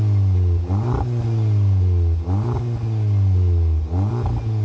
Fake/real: real